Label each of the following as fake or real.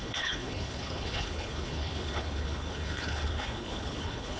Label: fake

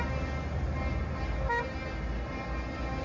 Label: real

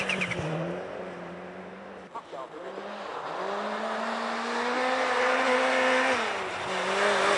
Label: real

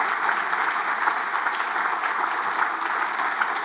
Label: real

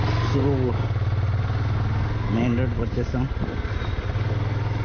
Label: real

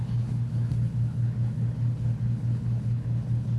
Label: fake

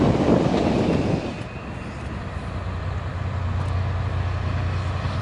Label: real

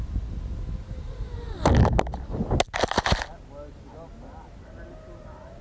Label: real